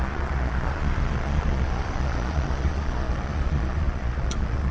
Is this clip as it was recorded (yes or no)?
no